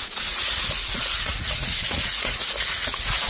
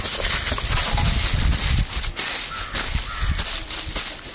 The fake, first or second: first